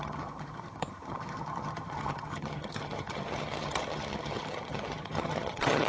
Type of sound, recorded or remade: remade